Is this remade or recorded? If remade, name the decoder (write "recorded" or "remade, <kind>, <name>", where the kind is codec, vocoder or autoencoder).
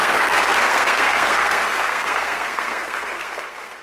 remade, codec, SNAC